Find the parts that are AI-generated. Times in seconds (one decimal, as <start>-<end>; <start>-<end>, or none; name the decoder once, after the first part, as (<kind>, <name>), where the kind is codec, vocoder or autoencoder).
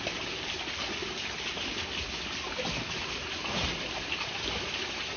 none